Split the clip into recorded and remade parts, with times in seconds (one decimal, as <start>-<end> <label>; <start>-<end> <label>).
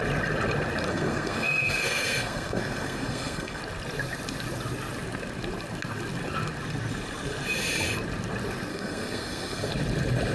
0.0-0.9 recorded; 0.9-3.6 remade; 3.6-8.7 recorded; 8.7-9.7 remade; 9.7-10.3 recorded